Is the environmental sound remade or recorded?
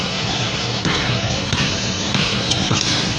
remade